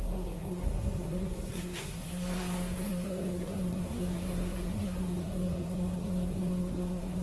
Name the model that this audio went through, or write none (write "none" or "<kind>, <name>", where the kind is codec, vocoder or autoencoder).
codec, SNAC